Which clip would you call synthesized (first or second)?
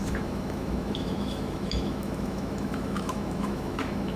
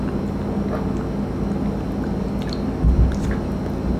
first